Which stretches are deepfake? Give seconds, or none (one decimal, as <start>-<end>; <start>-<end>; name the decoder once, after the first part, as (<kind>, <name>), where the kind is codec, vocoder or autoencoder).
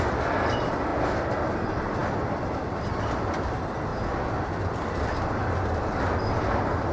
none